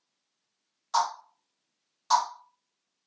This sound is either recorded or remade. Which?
recorded